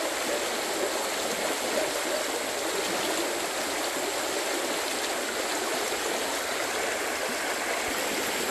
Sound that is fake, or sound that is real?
real